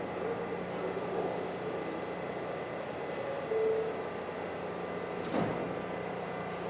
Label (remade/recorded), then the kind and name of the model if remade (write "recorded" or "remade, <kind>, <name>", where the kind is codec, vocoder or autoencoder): recorded